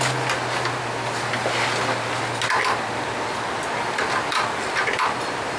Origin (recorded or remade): recorded